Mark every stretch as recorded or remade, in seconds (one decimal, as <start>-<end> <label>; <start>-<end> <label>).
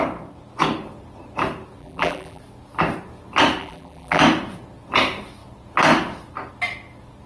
0.0-1.8 recorded; 1.8-2.4 remade; 2.4-3.6 recorded; 3.6-4.2 remade; 4.2-7.3 recorded